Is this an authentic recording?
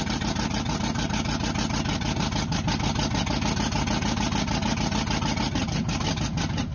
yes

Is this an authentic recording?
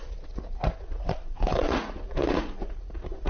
no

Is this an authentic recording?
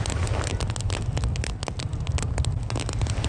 yes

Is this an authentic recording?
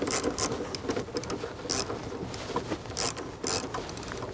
yes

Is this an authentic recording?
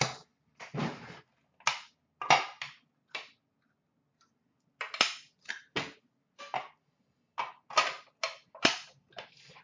yes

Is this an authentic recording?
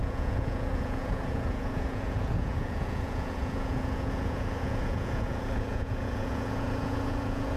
no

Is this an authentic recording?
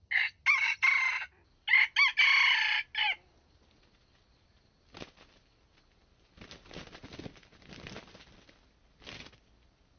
yes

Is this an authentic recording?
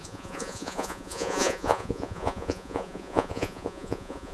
no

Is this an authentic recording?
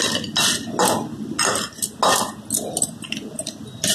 yes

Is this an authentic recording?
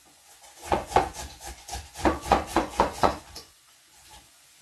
no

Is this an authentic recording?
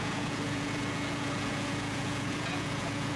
no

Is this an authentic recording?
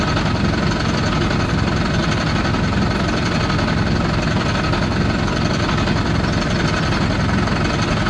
yes